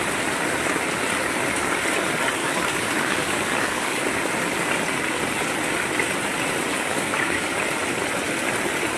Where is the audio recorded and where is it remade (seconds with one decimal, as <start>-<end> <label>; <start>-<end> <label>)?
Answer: 0.0-2.4 recorded; 2.4-4.1 remade; 4.1-6.7 recorded; 6.7-7.6 remade; 7.6-9.0 recorded